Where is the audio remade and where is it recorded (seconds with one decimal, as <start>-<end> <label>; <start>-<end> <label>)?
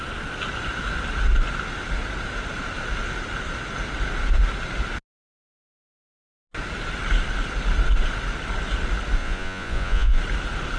0.0-9.2 recorded; 9.2-10.2 remade; 10.2-10.8 recorded